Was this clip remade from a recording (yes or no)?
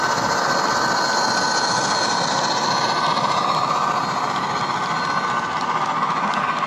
no